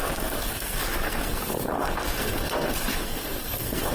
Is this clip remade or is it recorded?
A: remade